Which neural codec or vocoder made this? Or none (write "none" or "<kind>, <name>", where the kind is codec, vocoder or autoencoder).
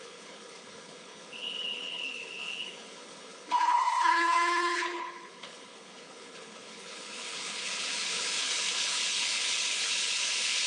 codec, HILCodec